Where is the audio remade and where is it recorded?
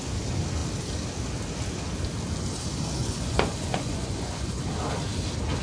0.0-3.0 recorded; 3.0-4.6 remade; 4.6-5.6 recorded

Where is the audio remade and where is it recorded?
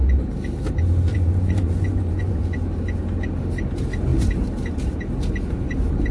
0.0-1.1 recorded; 1.1-2.4 remade; 2.4-6.1 recorded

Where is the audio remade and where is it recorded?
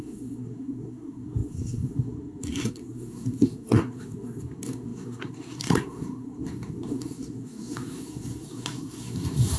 0.0-9.6 remade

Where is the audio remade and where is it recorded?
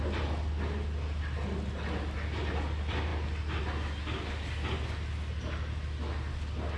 0.0-6.8 recorded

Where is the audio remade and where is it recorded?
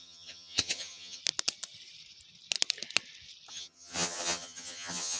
0.0-1.2 remade; 1.2-3.5 recorded; 3.5-5.2 remade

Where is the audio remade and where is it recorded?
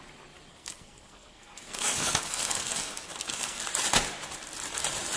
0.0-0.5 recorded; 0.5-3.6 remade; 3.6-5.2 recorded